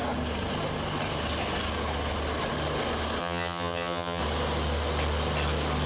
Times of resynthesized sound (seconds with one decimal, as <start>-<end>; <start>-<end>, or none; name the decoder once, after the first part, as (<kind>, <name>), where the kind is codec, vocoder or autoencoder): 3.2-4.2 (vocoder, HiFi-GAN)

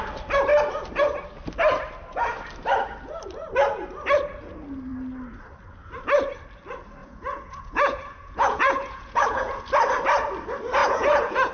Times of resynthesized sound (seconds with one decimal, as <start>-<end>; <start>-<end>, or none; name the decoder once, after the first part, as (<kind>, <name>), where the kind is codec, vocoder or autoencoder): 7.0-9.6 (vocoder, Vocos); 10.8-11.5

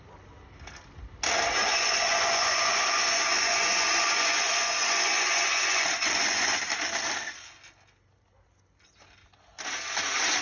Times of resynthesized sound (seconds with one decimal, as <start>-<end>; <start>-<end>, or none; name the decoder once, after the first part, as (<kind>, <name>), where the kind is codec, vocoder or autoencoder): 1.6-6.6 (vocoder, Vocos)

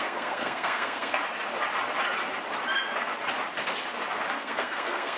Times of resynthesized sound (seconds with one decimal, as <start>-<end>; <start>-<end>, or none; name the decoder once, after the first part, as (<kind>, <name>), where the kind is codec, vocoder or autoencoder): 0.0-1.2 (codec, SNAC); 4.3-5.2

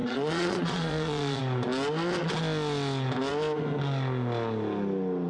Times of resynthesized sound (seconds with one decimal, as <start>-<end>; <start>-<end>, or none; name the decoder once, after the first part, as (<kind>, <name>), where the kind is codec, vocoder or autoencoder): 0.0-1.4 (vocoder, Vocos)

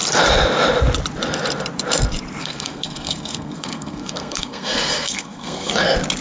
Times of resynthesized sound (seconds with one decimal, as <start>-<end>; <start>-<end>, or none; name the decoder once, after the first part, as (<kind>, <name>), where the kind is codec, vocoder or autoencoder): 2.4-5.7 (codec, SNAC)